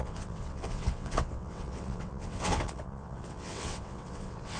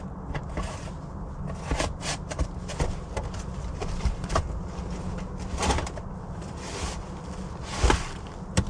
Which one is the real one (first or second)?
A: second